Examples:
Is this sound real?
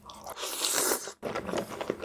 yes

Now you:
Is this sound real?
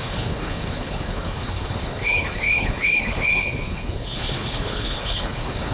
no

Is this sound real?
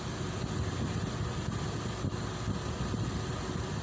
yes